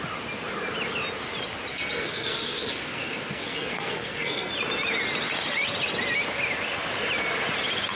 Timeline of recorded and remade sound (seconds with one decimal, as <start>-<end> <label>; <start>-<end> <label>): 0.0-1.7 recorded; 1.7-4.5 remade; 4.5-8.0 recorded